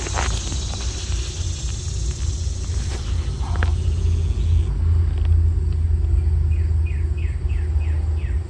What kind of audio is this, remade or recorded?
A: recorded